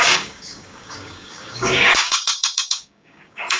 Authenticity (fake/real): fake